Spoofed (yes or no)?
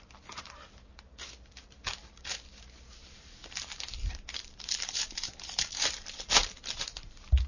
yes